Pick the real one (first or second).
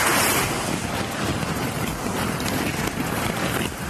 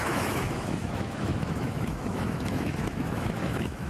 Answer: first